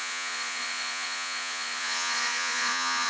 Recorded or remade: remade